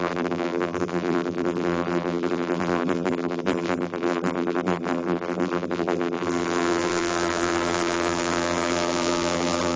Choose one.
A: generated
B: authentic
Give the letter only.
A